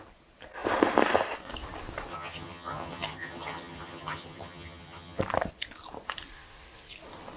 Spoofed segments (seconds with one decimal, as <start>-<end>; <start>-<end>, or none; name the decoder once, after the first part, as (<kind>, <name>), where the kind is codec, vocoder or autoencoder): 2.1-5.2 (vocoder, HiFi-GAN)